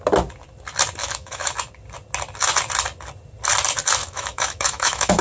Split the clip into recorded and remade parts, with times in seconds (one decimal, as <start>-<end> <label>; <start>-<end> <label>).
0.0-1.0 recorded; 1.0-1.7 remade; 1.7-4.0 recorded; 4.0-5.2 remade